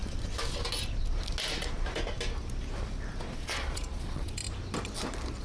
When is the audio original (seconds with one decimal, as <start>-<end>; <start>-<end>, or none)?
0.0-3.2; 4.4-5.4